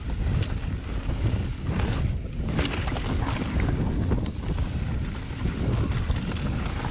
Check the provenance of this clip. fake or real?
real